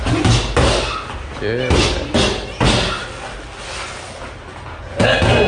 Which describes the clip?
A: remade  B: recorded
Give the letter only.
B